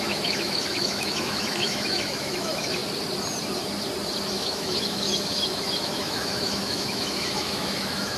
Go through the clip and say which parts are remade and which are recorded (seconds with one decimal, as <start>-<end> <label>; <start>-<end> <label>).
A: 0.0-2.8 remade; 2.8-4.2 recorded; 4.2-8.2 remade